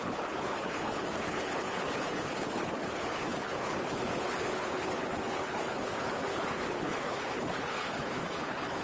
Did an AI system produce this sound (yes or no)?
yes